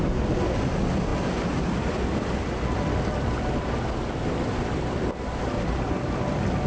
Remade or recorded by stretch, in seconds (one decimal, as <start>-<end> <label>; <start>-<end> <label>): 0.0-1.1 recorded; 1.1-5.1 remade; 5.1-6.7 recorded